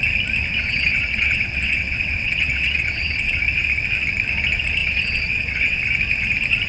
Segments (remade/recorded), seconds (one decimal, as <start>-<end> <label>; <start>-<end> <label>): 0.0-0.5 recorded; 0.5-3.4 remade; 3.4-4.8 recorded; 4.8-5.8 remade; 5.8-6.7 recorded